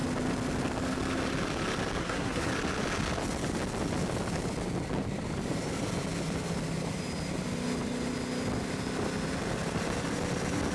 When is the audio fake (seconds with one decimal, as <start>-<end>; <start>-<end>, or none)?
2.0-2.5